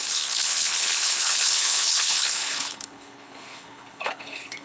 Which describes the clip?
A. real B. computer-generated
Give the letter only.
B